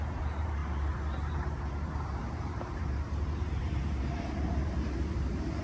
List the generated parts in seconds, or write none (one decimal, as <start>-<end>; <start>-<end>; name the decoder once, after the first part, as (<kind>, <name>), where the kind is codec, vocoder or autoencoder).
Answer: 0.0-0.6 (vocoder, BigVGAN v2); 1.3-5.6